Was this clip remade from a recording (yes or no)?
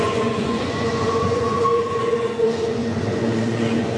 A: yes